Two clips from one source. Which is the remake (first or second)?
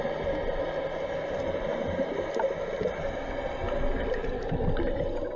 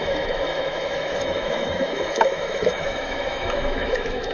second